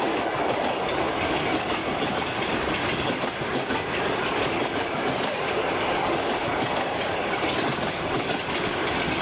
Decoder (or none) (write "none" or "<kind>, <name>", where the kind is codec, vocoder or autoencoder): codec, DAC